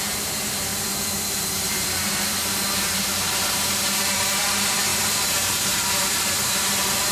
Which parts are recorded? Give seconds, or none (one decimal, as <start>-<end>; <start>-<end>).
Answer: 0.7-1.3

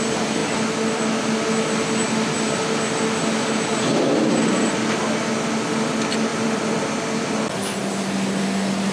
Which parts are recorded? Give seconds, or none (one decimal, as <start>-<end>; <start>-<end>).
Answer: 0.0-6.3; 7.9-8.9